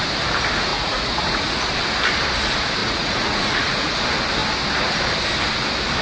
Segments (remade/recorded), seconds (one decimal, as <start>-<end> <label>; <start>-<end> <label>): 0.0-0.7 recorded; 0.7-1.7 remade; 1.7-2.8 recorded; 2.8-3.9 remade; 3.9-6.0 recorded